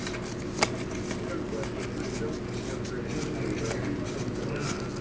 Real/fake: real